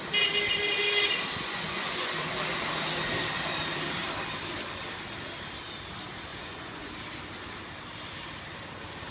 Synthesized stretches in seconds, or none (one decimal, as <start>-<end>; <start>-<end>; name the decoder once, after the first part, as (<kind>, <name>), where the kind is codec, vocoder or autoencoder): 1.4-2.3 (vocoder, Vocos); 6.3-6.9